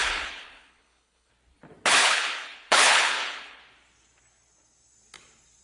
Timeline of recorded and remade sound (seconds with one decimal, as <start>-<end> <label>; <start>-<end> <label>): 0.0-1.3 remade; 1.3-2.0 recorded; 2.0-3.6 remade; 3.6-5.6 recorded